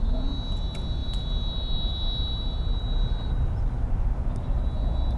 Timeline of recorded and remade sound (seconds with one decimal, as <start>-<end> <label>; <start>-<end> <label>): 0.0-5.2 recorded